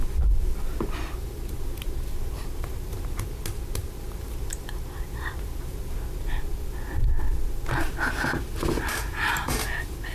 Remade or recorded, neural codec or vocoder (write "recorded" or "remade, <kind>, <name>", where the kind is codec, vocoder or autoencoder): recorded